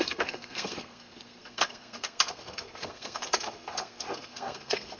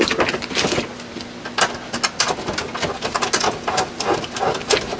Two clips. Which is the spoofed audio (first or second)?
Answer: first